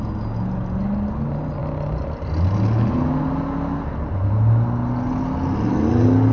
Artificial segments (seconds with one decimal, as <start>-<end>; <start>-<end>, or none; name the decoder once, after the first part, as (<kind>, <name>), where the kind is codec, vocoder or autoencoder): none